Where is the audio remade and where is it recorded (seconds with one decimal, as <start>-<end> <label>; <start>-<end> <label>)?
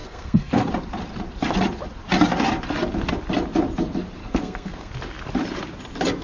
0.0-0.7 remade; 0.7-4.2 recorded; 4.2-4.9 remade; 4.9-6.2 recorded